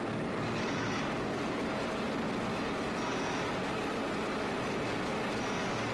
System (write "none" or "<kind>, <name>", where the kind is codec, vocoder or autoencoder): none